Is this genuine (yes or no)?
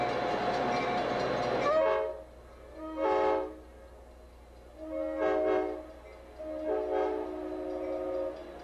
yes